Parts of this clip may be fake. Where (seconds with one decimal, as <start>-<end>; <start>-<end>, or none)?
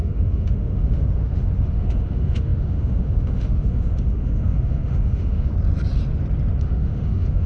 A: 0.0-5.5; 6.6-7.5